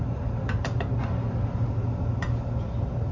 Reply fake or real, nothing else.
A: real